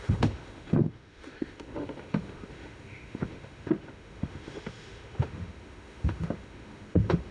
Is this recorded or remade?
remade